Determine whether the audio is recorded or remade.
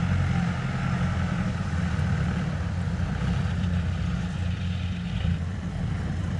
remade